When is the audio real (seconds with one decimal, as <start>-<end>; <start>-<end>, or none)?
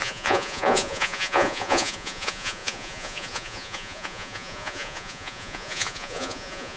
none